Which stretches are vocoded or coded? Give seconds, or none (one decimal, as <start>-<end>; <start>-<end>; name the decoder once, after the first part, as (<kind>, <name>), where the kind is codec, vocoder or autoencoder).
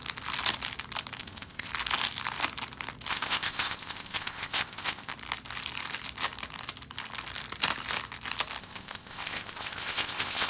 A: 1.2-1.7 (codec, ZipCodec); 3.1-5.1; 8.6-10.5